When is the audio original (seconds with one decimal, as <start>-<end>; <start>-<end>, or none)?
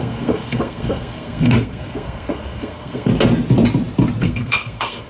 3.1-4.2